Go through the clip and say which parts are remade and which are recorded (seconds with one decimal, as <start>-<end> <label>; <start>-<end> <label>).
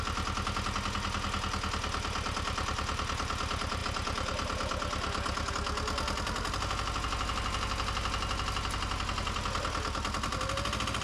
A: 0.0-11.0 recorded